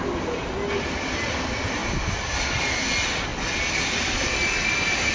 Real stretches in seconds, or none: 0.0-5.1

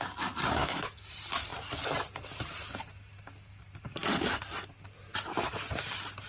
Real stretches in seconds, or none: 0.0-0.6; 1.1-6.3

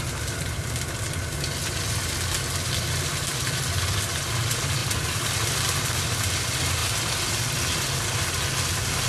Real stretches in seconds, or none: 0.0-4.8; 5.9-9.1

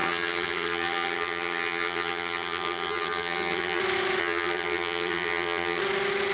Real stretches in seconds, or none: 3.8-4.2; 5.8-6.3

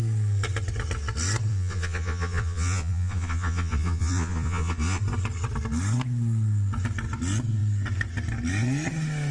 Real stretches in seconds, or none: 0.0-1.5; 5.0-9.3

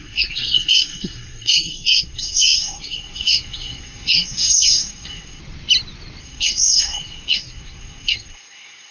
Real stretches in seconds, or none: 5.4-6.2

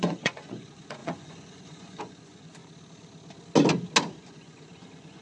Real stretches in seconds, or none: 2.6-4.2